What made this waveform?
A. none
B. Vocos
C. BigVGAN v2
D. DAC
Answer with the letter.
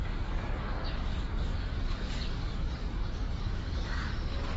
D